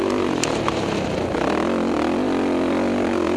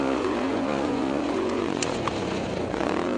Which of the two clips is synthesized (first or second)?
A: second